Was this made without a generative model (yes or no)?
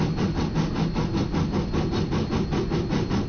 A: yes